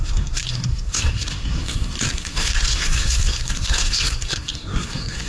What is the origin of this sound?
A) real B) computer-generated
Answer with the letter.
B